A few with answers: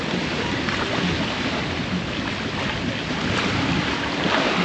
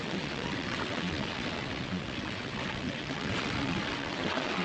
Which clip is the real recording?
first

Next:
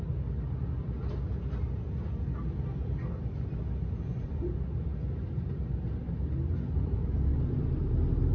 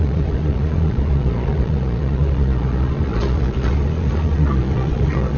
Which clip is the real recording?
first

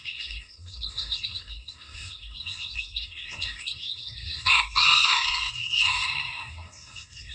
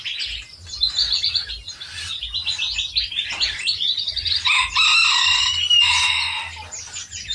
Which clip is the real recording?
second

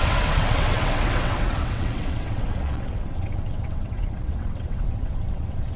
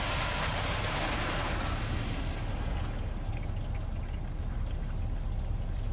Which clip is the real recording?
second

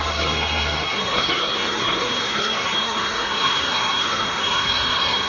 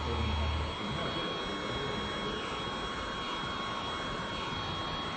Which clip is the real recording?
second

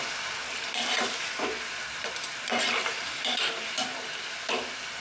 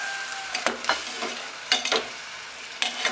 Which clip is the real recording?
second